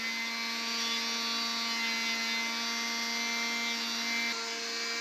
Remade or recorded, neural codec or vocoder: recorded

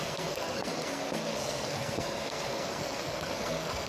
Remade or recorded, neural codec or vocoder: remade, codec, SNAC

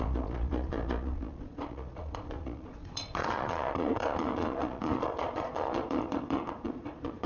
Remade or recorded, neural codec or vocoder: remade, vocoder, Vocos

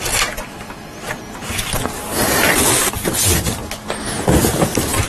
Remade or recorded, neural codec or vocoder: recorded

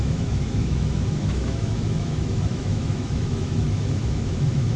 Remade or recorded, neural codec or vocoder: remade, autoencoder, DAC-VAE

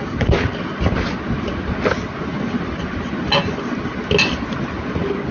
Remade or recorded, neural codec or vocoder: recorded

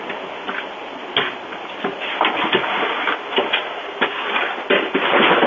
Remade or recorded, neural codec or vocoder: recorded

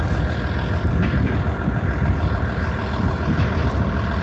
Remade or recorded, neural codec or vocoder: recorded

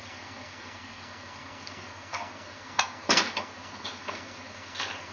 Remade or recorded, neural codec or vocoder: remade, codec, SNAC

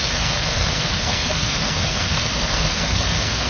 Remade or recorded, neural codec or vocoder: remade, codec, SNAC